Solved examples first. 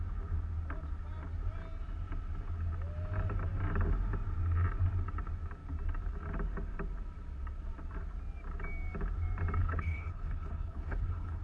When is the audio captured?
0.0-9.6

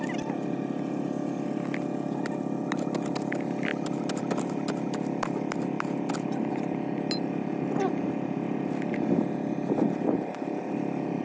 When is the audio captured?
0.0-11.2

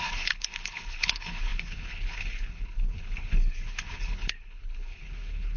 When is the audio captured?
none